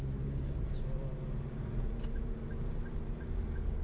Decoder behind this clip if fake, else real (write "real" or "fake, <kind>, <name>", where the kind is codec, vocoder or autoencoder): fake, vocoder, BigVGAN v2